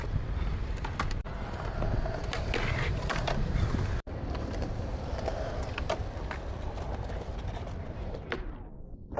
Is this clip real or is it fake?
fake